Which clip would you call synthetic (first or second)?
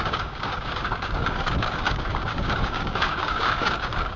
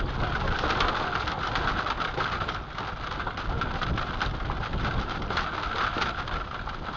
first